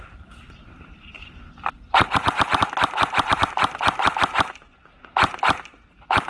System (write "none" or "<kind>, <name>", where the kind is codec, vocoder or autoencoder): none